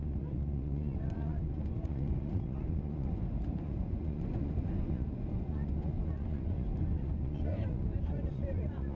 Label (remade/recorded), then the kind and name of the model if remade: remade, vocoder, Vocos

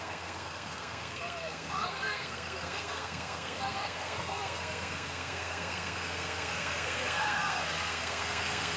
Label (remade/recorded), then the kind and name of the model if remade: remade, codec, SNAC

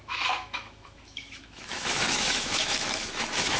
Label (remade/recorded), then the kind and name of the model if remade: remade, autoencoder, DAC-VAE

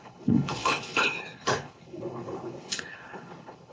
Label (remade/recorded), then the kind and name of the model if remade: remade, codec, HILCodec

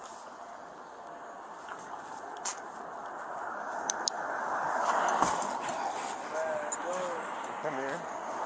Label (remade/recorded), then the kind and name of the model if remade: recorded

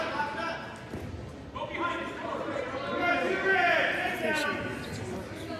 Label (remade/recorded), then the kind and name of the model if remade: recorded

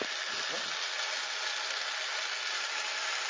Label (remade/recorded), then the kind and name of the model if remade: recorded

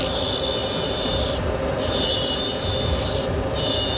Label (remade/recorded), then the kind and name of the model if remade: recorded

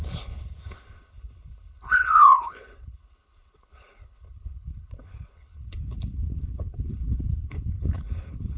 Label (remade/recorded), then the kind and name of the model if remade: remade, codec, HILCodec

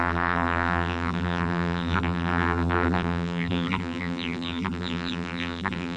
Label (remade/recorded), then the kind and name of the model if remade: remade, vocoder, BigVGAN v2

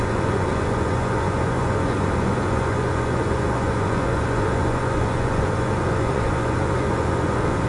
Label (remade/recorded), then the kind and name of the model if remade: remade, vocoder, Vocos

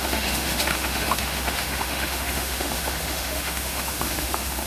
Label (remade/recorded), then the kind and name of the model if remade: remade, autoencoder, DAC-VAE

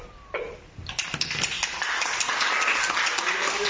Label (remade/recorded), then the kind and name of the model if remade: recorded